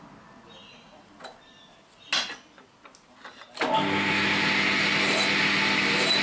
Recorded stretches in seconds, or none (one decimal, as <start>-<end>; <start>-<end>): 0.0-6.2